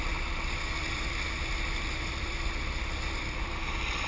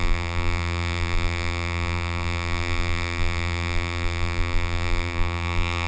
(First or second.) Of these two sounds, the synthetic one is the second